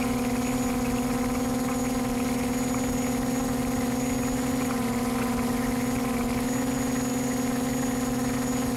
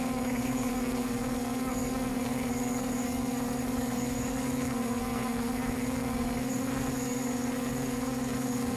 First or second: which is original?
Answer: first